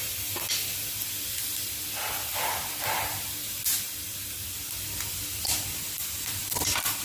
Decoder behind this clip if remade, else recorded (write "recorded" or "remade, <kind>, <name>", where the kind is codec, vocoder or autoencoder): recorded